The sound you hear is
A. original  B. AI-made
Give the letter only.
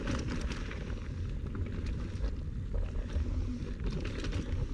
A